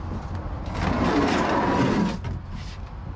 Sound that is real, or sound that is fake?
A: real